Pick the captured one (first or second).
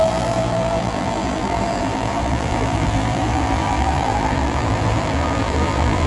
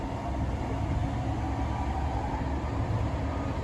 second